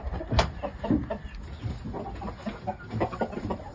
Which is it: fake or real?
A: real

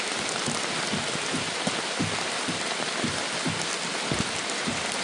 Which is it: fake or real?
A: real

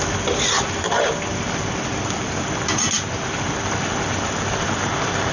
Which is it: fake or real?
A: real